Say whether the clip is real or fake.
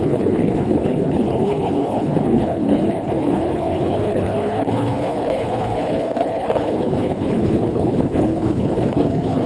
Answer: fake